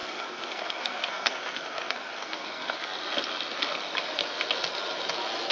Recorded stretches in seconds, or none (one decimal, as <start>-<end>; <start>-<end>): 2.8-5.5